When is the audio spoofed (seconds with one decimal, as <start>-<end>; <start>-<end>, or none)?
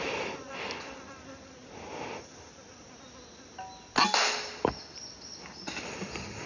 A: none